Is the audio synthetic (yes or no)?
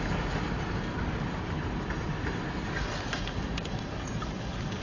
no